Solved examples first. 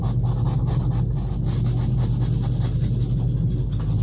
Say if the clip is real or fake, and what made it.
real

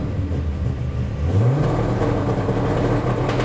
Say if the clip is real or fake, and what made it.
real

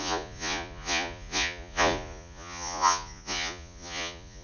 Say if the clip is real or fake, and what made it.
fake, vocoder, Vocos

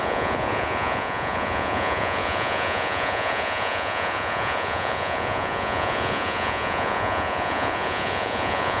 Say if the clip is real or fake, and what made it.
fake, vocoder, Vocos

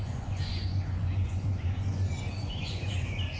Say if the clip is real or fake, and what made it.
fake, vocoder, Vocos